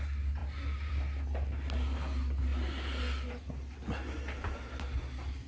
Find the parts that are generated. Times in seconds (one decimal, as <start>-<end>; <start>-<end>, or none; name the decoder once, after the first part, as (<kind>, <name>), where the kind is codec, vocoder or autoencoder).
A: none